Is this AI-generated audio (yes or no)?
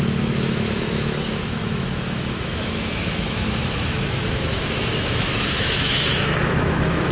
yes